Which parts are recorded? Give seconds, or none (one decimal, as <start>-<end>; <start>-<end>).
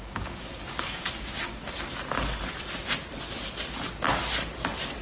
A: 1.8-5.0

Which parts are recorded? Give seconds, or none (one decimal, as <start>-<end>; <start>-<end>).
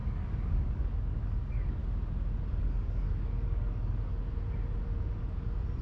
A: 1.8-2.6; 4.1-5.8